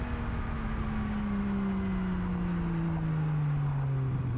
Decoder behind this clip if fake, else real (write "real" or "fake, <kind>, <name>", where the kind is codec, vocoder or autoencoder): real